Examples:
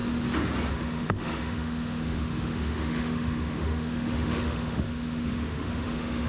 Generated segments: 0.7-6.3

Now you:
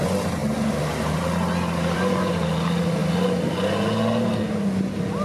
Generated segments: 0.4-2.3

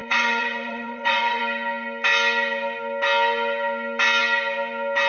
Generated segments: 0.0-1.4

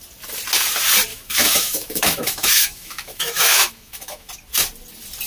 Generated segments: 1.1-4.3

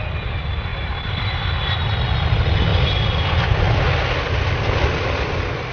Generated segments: 0.7-1.4